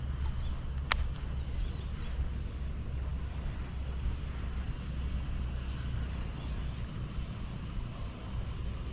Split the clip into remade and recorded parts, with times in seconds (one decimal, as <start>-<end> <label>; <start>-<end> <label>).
0.0-8.9 recorded

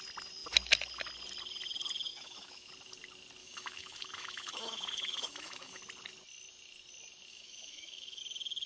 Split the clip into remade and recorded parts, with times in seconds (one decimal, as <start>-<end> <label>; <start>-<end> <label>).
0.0-2.1 recorded; 2.1-2.7 remade; 2.7-3.4 recorded; 3.4-5.8 remade; 5.8-7.3 recorded; 7.3-8.2 remade; 8.2-8.7 recorded